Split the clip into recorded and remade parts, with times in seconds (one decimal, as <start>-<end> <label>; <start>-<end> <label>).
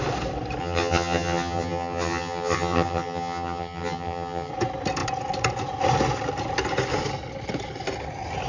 0.0-0.6 recorded; 0.6-4.5 remade; 4.5-8.5 recorded